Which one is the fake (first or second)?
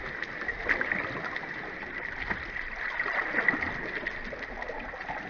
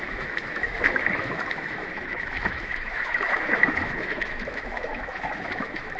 second